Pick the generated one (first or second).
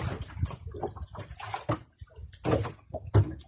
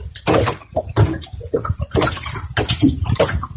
second